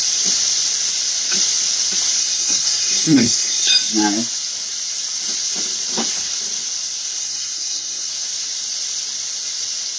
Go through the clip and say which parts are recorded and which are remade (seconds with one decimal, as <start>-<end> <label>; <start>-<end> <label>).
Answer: 0.0-2.2 recorded; 2.2-3.7 remade; 3.7-7.2 recorded; 7.2-8.1 remade; 8.1-10.0 recorded